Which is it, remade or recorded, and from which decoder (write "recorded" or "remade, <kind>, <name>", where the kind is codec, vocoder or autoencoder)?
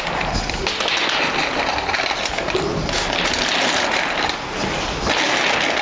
recorded